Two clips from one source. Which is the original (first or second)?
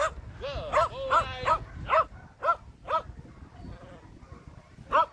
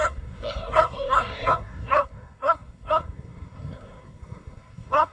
first